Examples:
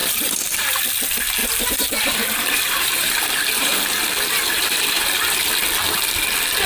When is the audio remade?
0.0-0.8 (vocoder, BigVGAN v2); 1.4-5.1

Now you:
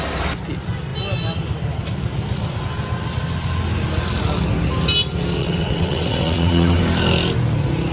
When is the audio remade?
5.4-6.8 (vocoder, WaveNeXt)

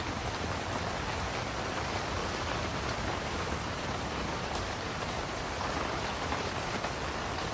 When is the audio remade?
2.2-6.7 (vocoder, BigVGAN v2)

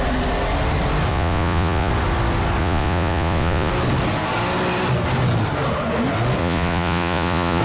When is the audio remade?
1.1-1.9 (vocoder, Vocos); 2.6-3.7; 6.4-7.6

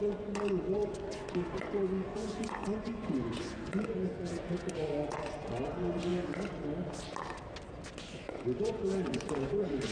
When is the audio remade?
0.0-6.1 (vocoder, Vocos); 8.0-9.9

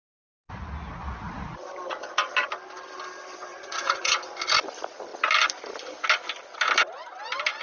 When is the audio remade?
3.5-4.1 (vocoder, Vocos)

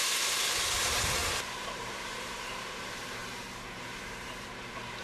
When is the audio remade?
0.0-5.0 (vocoder, BigVGAN v2)